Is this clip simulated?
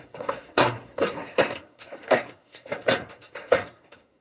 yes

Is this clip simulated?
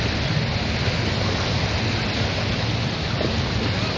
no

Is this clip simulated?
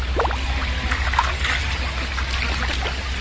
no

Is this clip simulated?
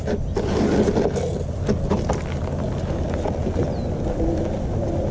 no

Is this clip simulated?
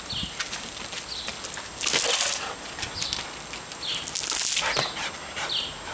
no